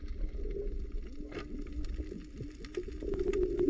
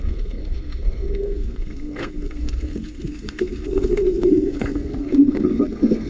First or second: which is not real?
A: second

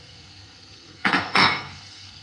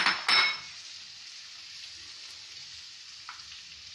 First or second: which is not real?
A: first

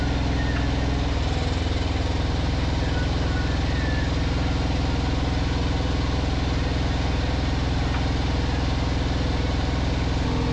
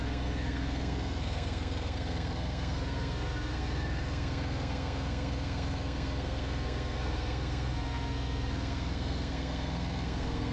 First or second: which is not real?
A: second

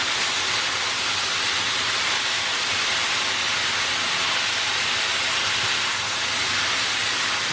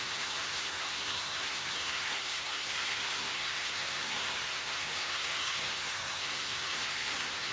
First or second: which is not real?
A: second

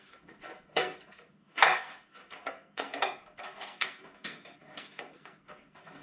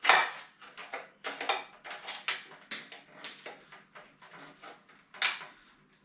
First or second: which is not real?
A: first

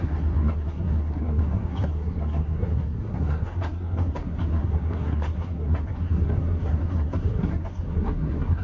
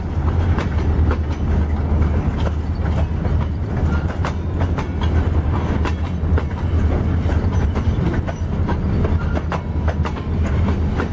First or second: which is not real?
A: first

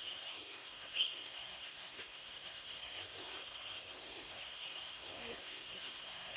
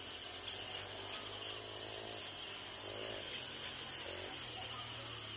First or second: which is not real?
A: first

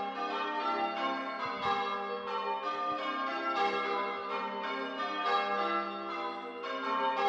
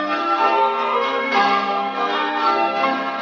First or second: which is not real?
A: second